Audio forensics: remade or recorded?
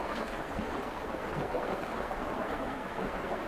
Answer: remade